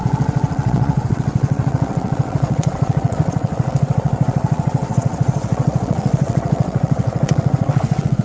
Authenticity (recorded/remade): remade